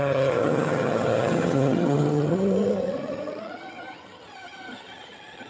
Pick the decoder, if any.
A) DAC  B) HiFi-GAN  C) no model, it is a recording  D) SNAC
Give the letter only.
B